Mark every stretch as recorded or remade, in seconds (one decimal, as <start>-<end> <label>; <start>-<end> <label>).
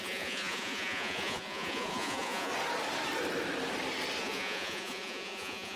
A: 0.0-2.5 remade; 2.5-4.2 recorded; 4.2-5.8 remade